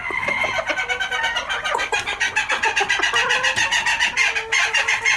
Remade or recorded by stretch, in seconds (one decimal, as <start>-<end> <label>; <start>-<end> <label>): 0.0-5.2 recorded